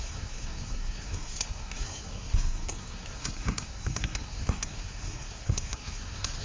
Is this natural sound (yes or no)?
no